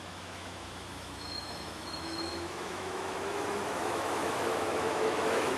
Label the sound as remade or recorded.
remade